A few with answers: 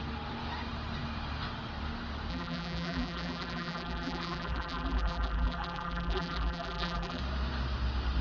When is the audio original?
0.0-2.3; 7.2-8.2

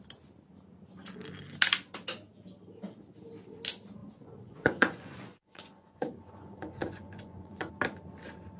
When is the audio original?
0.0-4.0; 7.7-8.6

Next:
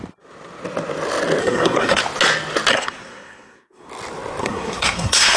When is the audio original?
0.0-1.4; 2.0-2.7; 3.9-4.4

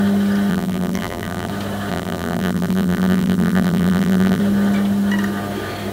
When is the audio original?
0.0-0.5; 1.5-1.9; 4.4-5.9

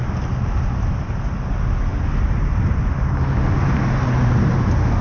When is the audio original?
0.0-5.0